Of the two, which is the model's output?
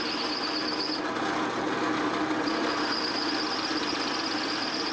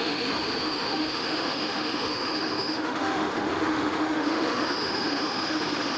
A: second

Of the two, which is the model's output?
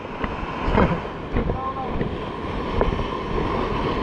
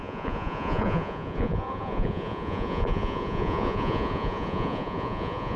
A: second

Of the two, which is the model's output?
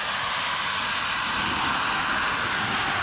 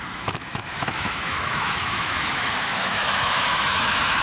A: second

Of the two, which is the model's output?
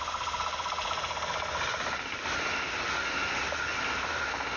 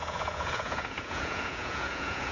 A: second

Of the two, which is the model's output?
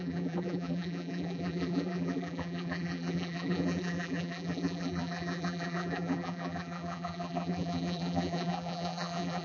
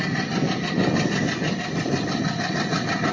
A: first